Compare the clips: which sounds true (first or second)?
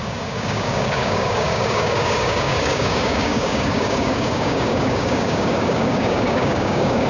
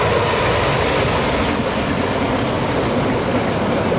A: second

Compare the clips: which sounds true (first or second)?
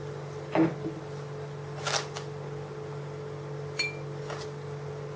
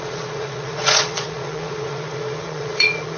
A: first